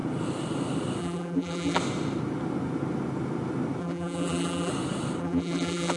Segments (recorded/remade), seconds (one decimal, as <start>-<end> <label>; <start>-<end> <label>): 0.0-1.0 recorded; 1.0-1.8 remade; 1.8-3.8 recorded; 3.8-4.7 remade; 4.7-5.2 recorded; 5.2-6.0 remade